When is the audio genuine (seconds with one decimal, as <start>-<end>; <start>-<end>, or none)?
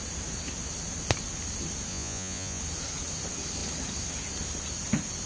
0.0-1.9; 2.6-5.3